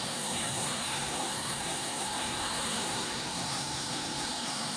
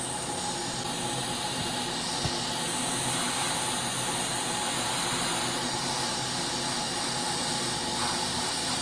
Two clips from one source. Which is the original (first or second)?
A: second